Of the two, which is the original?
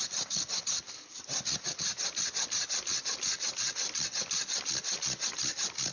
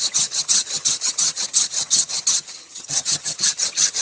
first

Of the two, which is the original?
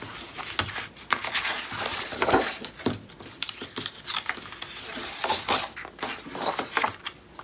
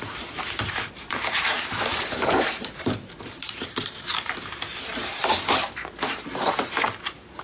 first